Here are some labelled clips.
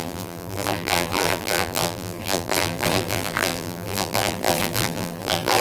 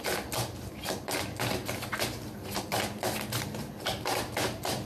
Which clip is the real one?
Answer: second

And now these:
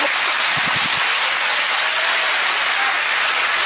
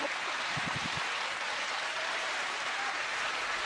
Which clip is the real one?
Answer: first